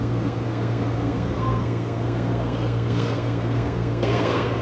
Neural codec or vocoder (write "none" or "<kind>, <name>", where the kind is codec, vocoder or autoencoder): codec, SNAC